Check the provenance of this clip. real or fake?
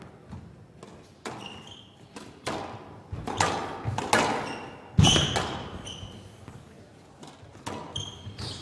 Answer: real